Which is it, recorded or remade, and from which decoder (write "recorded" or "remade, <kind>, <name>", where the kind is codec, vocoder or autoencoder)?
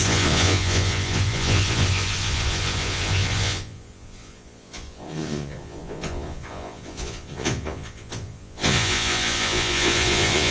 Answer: remade, vocoder, Vocos